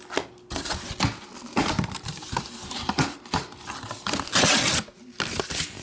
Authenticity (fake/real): real